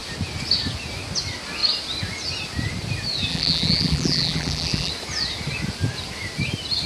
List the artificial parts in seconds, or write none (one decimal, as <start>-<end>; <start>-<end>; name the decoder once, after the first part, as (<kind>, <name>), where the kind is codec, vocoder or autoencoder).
3.3-4.9 (vocoder, BigVGAN v2)